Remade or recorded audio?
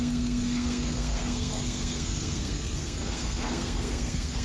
remade